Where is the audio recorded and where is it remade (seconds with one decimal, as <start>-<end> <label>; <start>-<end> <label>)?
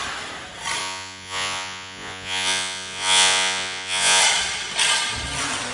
0.0-0.8 recorded; 0.8-4.2 remade; 4.2-5.7 recorded